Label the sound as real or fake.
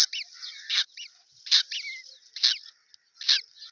real